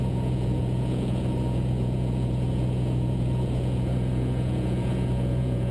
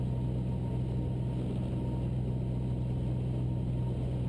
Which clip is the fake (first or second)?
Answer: first